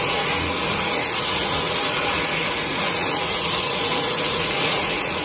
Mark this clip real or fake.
fake